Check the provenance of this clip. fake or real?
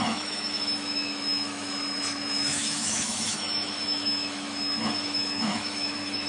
fake